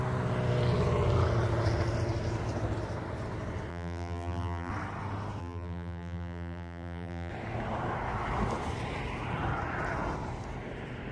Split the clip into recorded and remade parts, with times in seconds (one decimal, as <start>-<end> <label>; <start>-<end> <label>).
0.0-3.7 recorded; 3.7-4.7 remade; 4.7-5.4 recorded; 5.4-7.3 remade; 7.3-11.1 recorded

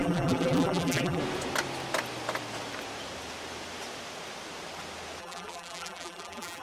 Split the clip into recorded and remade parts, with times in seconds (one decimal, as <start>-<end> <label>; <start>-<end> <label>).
0.0-1.2 remade; 1.2-5.2 recorded; 5.2-6.6 remade

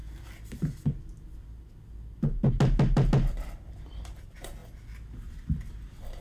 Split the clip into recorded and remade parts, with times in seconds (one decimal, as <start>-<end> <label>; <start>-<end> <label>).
0.0-3.7 recorded; 3.7-4.6 remade; 4.6-5.7 recorded; 5.7-6.2 remade